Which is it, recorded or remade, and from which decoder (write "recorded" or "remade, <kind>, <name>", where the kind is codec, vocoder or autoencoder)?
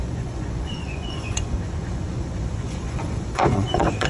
remade, vocoder, Vocos